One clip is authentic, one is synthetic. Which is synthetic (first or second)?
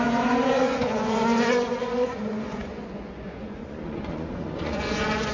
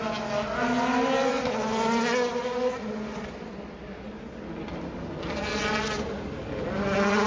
first